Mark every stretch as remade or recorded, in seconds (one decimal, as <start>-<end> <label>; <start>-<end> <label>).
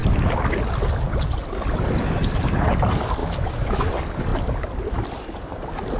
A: 0.0-3.2 recorded; 3.2-3.9 remade; 3.9-6.0 recorded